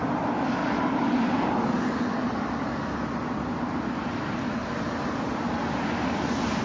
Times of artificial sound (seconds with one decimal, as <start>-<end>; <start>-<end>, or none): none

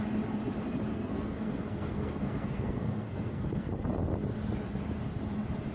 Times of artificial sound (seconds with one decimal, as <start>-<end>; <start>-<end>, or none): 0.9-3.7

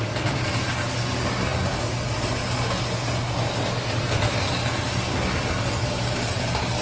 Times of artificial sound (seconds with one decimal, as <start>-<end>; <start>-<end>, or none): none

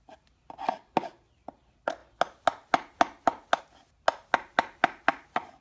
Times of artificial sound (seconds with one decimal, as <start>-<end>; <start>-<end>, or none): none